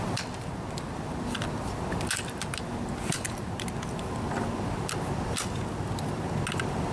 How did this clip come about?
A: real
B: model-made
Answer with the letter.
A